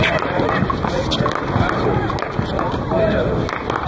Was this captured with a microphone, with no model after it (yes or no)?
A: yes